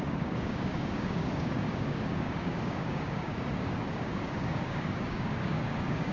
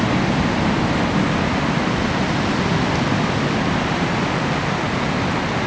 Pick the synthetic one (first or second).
first